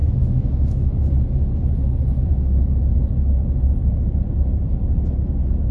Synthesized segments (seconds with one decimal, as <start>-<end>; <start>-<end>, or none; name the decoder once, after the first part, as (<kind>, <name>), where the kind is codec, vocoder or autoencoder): 0.0-1.1 (autoencoder, DAC-VAE)